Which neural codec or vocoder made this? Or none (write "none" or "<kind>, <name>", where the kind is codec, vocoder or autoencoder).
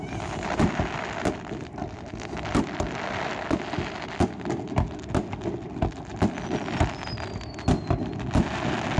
none